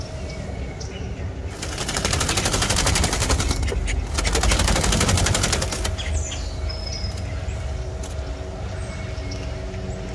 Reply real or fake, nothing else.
real